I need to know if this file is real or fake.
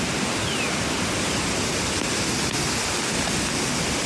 real